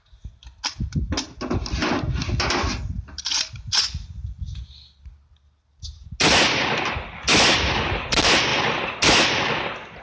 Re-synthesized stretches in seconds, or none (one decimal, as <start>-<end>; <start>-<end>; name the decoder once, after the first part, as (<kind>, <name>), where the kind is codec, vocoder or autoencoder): none